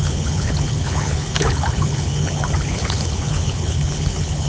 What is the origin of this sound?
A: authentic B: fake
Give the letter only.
B